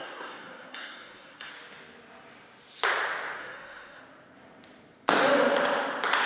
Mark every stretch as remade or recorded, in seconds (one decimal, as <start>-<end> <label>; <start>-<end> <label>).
0.0-1.5 remade; 1.5-3.4 recorded; 3.4-4.0 remade; 4.0-6.3 recorded